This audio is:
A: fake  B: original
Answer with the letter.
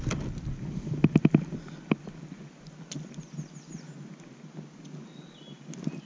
B